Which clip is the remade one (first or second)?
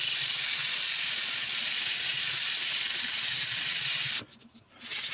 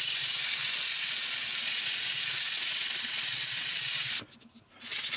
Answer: first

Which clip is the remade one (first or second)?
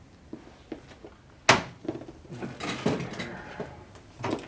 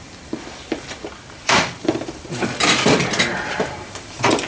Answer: second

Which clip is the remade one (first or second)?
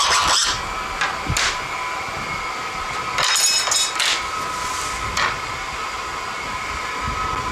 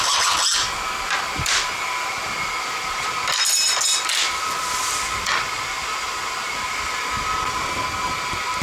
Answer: second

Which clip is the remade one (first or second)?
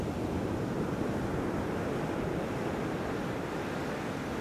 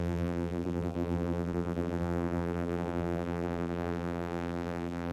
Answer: second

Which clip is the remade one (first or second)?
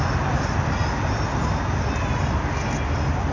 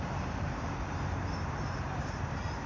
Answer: second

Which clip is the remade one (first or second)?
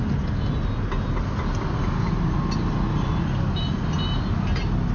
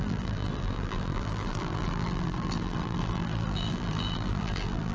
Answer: second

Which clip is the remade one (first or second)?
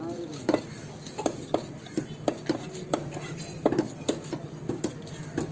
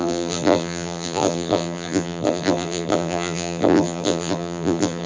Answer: second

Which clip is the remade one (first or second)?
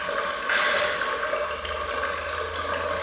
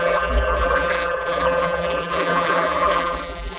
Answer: second